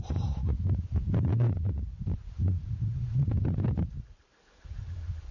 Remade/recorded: remade